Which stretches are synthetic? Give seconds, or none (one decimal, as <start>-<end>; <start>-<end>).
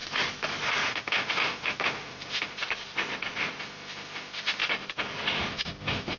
0.0-0.9; 2.6-3.6; 4.6-5.5